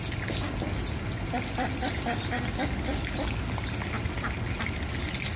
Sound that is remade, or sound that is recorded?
recorded